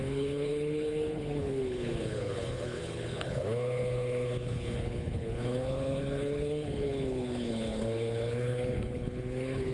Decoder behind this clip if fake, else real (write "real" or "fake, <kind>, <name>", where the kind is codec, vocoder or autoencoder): fake, codec, HILCodec